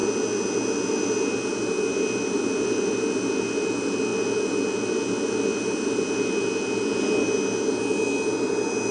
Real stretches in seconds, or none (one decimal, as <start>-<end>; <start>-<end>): 0.0-8.9